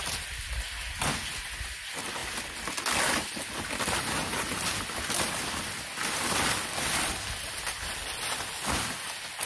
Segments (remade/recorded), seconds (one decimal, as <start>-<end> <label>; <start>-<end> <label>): 0.0-9.5 recorded